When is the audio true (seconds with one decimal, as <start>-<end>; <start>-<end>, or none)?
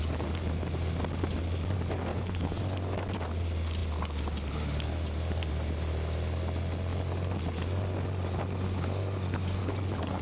0.0-2.1; 2.6-9.6